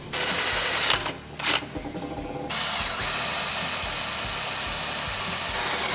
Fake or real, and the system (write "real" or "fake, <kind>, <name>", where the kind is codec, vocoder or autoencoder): real